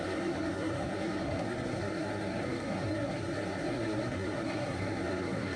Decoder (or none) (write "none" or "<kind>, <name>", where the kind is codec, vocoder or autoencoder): codec, SNAC